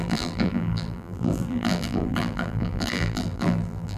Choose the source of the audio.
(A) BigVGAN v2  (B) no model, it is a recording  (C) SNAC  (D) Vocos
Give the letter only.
A